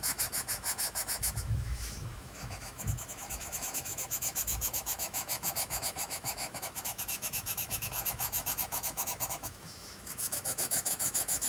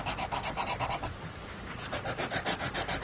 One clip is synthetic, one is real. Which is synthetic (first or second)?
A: first